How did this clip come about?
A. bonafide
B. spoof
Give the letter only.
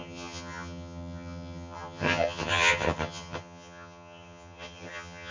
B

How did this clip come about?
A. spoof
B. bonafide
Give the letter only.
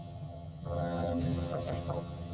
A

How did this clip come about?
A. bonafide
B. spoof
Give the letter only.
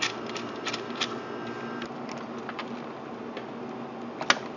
A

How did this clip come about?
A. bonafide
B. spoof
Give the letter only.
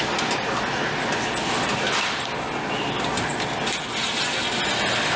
A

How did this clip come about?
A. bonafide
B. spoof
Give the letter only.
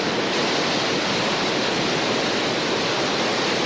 A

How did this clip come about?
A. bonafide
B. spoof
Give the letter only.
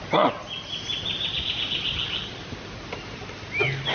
A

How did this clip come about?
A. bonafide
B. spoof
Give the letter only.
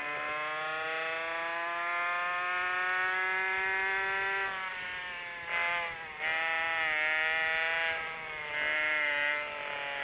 A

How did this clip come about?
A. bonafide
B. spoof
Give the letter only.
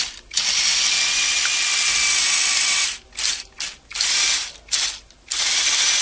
A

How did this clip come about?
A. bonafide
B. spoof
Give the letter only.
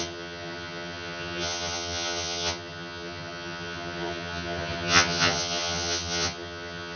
B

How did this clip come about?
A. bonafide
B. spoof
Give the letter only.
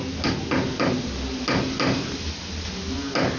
A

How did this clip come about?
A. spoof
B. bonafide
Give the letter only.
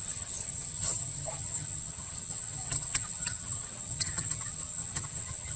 A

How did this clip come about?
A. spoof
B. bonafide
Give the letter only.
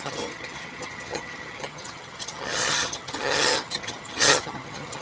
A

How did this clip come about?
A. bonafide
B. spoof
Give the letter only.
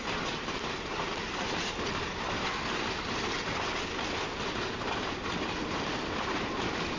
A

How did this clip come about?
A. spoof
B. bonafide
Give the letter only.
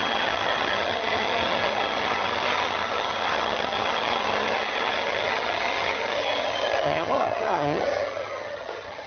A